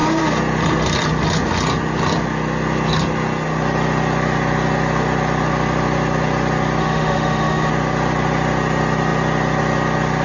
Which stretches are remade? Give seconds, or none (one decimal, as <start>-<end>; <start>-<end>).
6.8-7.7